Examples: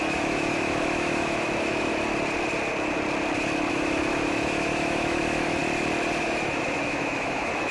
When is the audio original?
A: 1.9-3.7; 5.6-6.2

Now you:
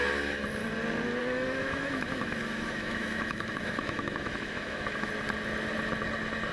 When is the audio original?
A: 0.0-1.2; 5.1-6.5

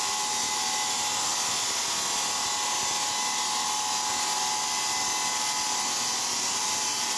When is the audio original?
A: 0.0-7.2

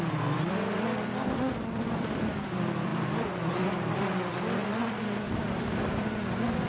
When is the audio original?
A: none

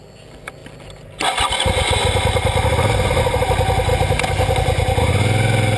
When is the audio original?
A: 0.0-5.8

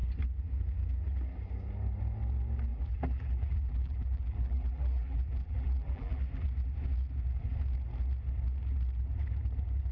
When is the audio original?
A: 0.0-2.7; 6.2-9.9

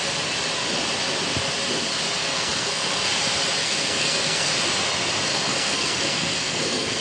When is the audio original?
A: 0.0-2.2; 3.1-3.6; 4.5-5.3

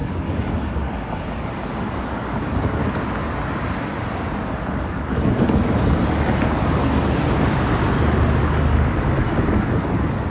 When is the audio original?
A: 2.8-4.7; 6.8-8.4